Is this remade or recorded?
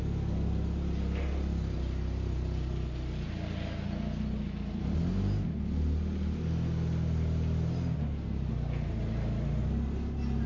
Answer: recorded